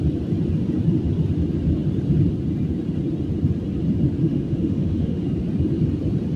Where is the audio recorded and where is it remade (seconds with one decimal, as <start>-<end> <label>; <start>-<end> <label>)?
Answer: 0.0-4.2 recorded; 4.2-5.2 remade; 5.2-6.4 recorded